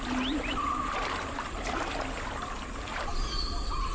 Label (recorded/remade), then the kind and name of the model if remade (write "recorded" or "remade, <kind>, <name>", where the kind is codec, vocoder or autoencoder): recorded